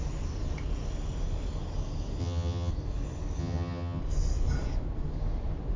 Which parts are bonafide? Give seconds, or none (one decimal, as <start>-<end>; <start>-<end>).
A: 0.0-2.2; 2.7-3.4; 4.0-5.8